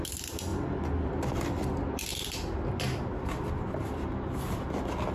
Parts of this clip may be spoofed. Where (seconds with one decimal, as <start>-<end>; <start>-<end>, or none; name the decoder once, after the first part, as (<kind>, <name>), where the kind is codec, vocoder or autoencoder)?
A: none